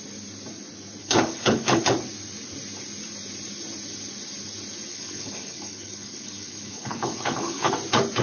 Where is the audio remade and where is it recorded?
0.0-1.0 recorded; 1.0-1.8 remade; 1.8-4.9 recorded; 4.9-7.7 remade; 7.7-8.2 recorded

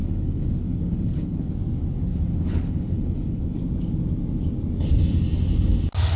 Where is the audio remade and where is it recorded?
0.0-1.5 remade; 1.5-2.1 recorded; 2.1-3.6 remade; 3.6-6.2 recorded